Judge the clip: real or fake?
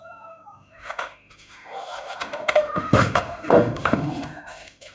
fake